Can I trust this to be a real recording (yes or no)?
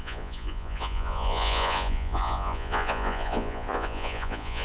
no